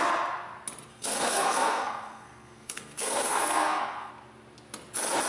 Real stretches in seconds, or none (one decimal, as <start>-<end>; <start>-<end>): 0.0-0.9; 4.1-5.3